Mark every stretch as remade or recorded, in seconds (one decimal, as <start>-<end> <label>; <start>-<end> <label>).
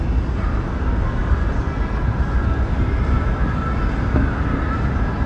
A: 0.0-5.3 recorded